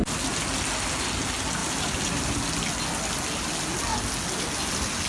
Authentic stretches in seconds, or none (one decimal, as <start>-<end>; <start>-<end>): 0.0-1.6; 2.4-5.1